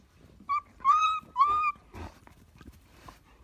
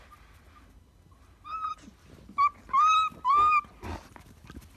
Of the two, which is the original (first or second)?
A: second